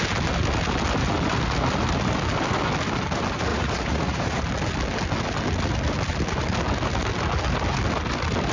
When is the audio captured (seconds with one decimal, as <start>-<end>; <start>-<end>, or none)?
0.0-3.5; 4.4-8.5